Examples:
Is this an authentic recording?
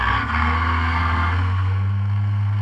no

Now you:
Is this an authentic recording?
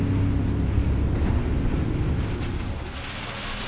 yes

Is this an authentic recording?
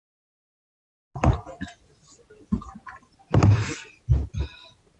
yes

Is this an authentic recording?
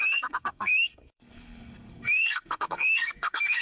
no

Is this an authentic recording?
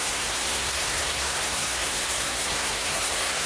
no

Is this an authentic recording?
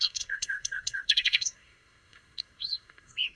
no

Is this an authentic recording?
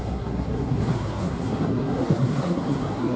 no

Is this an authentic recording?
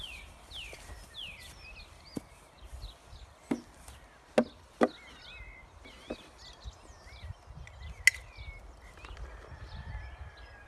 yes